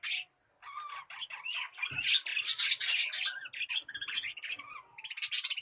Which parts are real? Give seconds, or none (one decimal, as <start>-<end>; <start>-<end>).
0.0-5.6